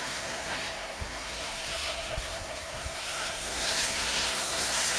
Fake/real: fake